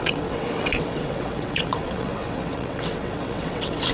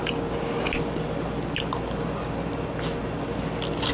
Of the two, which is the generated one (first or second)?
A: first